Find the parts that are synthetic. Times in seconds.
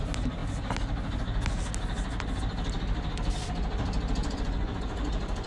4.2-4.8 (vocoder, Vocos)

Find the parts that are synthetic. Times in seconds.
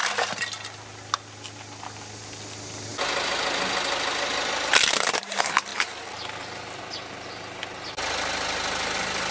none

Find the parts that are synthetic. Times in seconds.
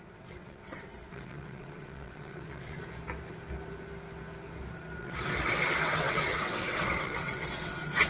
0.0-2.8 (vocoder, WaveNeXt); 5.0-8.1